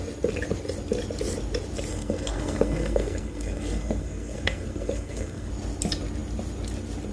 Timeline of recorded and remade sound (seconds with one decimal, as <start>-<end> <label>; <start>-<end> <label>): 0.0-1.9 recorded; 1.9-5.5 remade; 5.5-7.1 recorded